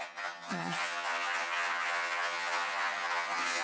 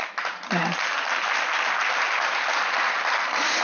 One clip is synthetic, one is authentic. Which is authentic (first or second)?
second